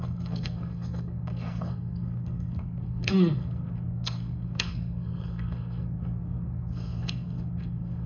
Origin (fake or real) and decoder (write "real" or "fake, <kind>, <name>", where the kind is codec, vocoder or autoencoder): fake, codec, SNAC